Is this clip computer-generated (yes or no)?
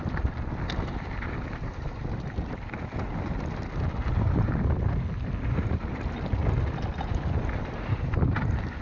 no